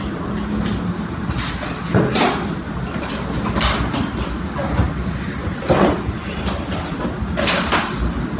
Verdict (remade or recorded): recorded